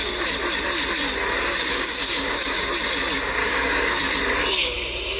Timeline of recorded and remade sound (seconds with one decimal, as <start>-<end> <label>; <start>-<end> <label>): 0.0-1.7 recorded; 1.7-2.7 remade; 2.7-3.4 recorded; 3.4-4.0 remade; 4.0-5.2 recorded